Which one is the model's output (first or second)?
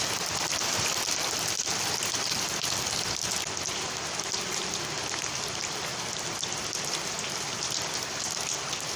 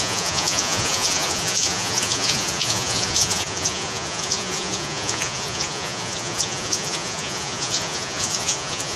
second